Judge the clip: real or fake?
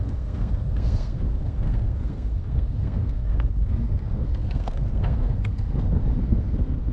fake